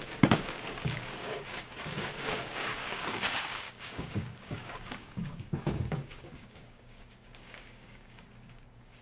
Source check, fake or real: fake